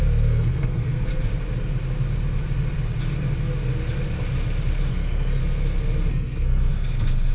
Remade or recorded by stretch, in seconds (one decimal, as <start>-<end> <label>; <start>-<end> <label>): 0.0-1.1 remade; 1.1-4.9 recorded; 4.9-5.4 remade; 5.4-6.1 recorded; 6.1-7.3 remade